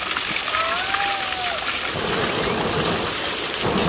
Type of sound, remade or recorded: recorded